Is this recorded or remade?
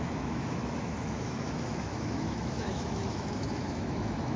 remade